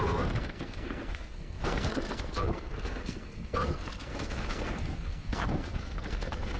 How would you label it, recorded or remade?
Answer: remade